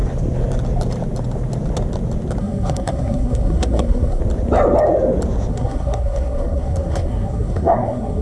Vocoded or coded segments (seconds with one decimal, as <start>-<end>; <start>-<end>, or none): 2.4-4.2; 5.5-8.2